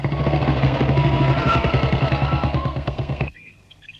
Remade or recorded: remade